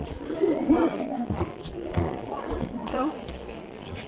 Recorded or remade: remade